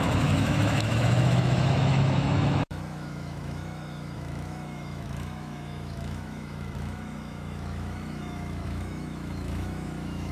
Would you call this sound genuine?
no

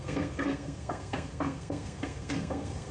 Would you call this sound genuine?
no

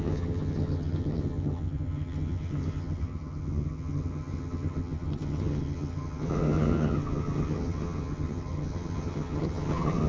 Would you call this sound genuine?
no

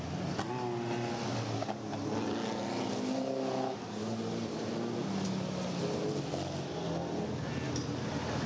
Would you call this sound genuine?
yes